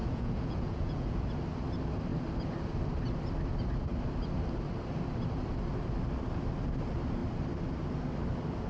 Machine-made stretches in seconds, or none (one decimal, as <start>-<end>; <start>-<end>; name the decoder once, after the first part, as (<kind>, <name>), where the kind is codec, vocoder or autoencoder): 0.0-1.3 (vocoder, Vocos)